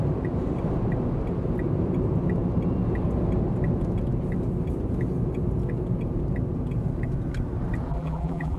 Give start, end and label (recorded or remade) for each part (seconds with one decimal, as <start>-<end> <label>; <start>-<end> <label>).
0.0-7.9 recorded; 7.9-8.6 remade